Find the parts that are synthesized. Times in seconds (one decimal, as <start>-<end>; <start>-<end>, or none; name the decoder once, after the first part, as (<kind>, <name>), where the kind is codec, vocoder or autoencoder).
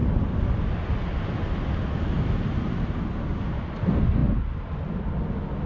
none